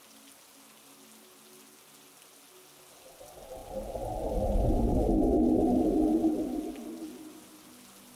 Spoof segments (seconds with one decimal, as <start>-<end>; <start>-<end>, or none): none